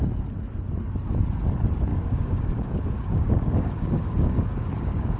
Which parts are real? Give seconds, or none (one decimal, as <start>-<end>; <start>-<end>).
0.0-1.9